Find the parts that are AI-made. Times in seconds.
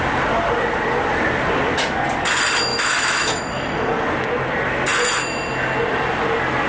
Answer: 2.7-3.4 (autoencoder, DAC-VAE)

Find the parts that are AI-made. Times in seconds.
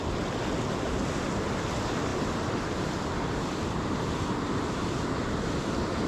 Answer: 2.1-4.3 (vocoder, BigVGAN v2)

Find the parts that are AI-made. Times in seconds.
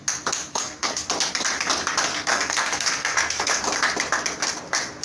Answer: 0.5-1.0 (codec, SNAC); 2.1-3.6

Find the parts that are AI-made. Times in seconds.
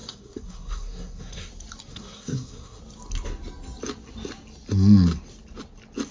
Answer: 0.0-1.5 (codec, SNAC); 1.9-2.8